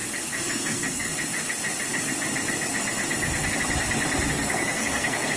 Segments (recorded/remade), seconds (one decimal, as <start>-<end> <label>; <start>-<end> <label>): 0.0-0.5 recorded; 0.5-1.1 remade; 1.1-4.3 recorded; 4.3-5.4 remade

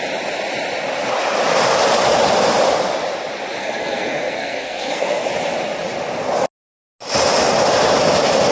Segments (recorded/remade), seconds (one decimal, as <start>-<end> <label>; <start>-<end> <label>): 0.0-3.6 recorded; 3.6-5.3 remade; 5.3-8.5 recorded

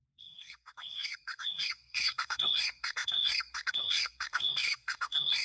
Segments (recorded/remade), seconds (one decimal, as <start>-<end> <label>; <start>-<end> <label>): 0.0-5.4 remade

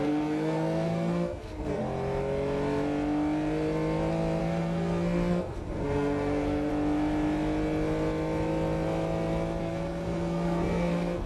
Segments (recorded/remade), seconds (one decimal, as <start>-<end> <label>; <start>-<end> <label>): 0.0-1.8 remade; 1.8-4.4 recorded; 4.4-6.7 remade; 6.7-9.6 recorded; 9.6-11.3 remade

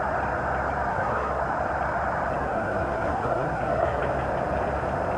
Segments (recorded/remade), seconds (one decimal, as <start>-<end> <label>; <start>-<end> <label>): 0.0-0.9 recorded; 0.9-1.4 remade; 1.4-2.4 recorded; 2.4-4.0 remade; 4.0-5.2 recorded

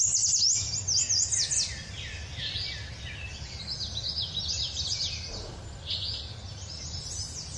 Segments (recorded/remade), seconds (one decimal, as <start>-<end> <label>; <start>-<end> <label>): 0.0-7.6 recorded